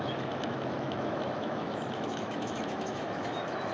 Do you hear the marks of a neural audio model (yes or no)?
yes